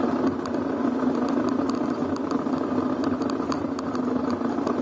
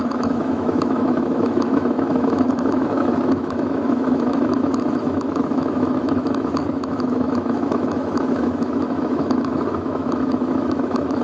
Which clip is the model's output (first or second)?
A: second